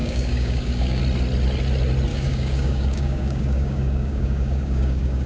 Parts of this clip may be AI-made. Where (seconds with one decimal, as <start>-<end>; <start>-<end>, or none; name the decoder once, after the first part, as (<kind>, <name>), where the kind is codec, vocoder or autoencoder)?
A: 0.0-1.0 (codec, DAC); 2.1-5.3